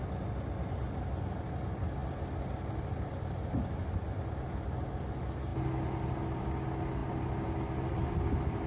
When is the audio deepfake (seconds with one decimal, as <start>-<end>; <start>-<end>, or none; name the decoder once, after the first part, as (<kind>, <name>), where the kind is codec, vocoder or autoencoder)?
none